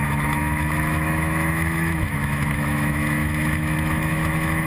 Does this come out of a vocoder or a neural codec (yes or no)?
yes